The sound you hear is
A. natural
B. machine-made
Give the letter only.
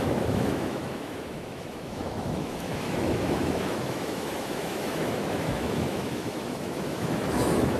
B